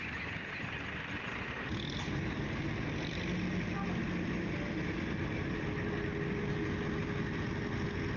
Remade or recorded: recorded